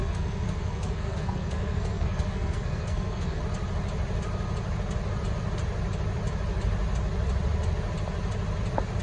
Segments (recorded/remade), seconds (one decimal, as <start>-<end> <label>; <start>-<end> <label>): 0.0-3.4 remade; 3.4-9.0 recorded